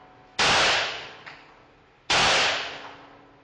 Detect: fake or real real